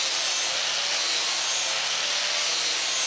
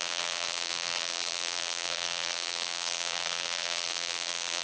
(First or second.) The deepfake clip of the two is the second